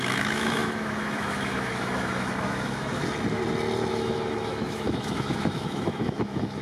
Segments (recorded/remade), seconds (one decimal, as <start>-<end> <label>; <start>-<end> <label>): 0.0-3.0 remade; 3.0-3.9 recorded; 3.9-6.6 remade